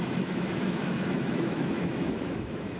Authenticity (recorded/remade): remade